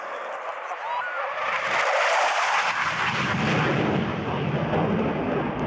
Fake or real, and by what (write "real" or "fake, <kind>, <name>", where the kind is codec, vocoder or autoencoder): real